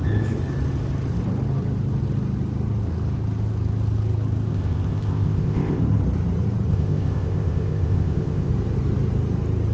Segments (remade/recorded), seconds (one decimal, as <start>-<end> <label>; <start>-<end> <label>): 0.0-4.5 recorded; 4.5-5.8 remade; 5.8-6.7 recorded; 6.7-8.5 remade; 8.5-9.7 recorded